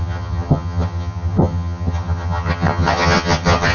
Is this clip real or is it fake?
fake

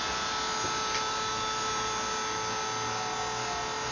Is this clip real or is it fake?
real